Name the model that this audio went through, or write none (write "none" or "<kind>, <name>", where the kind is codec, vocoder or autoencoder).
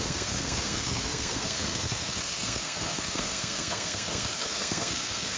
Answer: codec, SNAC